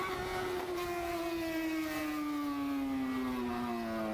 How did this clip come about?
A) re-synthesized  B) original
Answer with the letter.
B